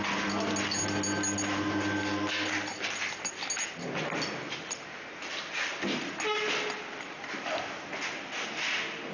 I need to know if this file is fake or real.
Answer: real